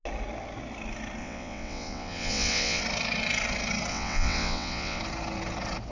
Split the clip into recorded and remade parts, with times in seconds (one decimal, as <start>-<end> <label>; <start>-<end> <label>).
0.0-1.2 recorded; 1.2-2.8 remade; 2.8-3.9 recorded; 3.9-5.0 remade; 5.0-5.9 recorded